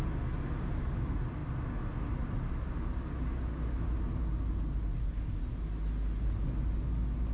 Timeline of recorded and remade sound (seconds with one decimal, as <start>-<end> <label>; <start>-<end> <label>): 0.0-7.3 recorded